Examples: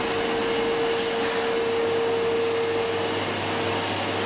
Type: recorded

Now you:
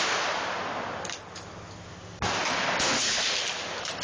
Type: recorded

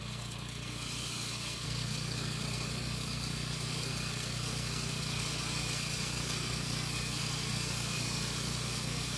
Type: remade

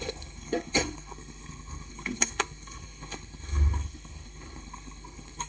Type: remade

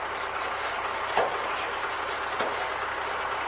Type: recorded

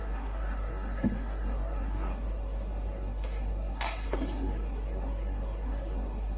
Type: remade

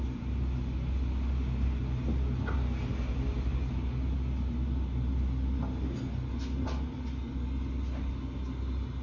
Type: recorded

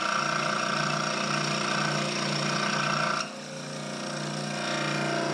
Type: recorded